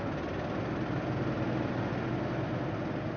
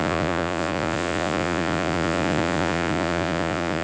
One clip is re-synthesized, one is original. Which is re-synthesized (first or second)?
second